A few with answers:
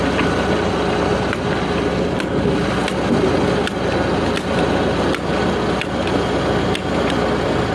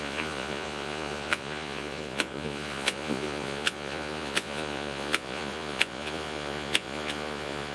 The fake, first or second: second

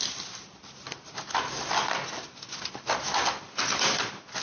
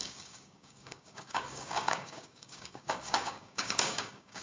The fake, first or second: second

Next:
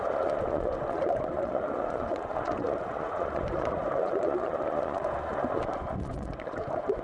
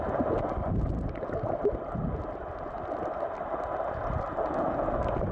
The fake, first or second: first